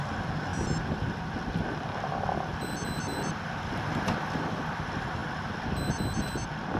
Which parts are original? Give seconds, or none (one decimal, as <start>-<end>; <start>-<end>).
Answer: 0.0-6.8